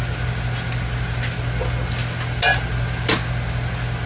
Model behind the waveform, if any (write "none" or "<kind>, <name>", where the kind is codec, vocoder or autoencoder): none